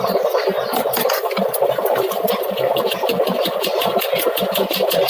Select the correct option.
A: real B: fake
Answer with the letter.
B